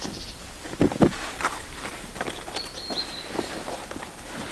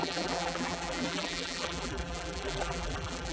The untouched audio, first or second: first